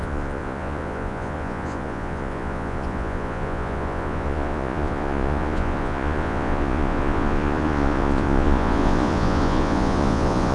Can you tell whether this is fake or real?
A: fake